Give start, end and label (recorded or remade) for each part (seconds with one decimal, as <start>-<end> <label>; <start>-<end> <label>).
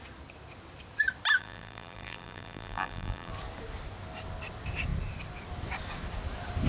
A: 0.0-1.4 recorded; 1.4-3.3 remade; 3.3-6.7 recorded